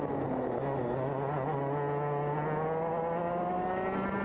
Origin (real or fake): real